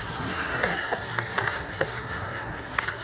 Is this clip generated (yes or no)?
yes